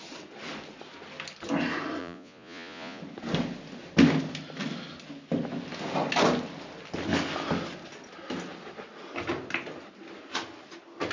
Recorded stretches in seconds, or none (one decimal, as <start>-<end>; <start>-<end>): 0.0-2.0; 3.0-11.1